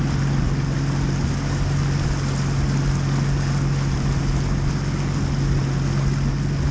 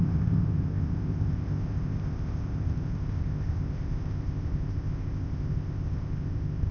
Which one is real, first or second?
first